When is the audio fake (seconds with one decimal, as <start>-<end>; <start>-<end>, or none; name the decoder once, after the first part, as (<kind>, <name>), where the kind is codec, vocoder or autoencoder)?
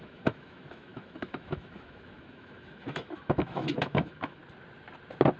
0.0-4.4 (autoencoder, DAC-VAE)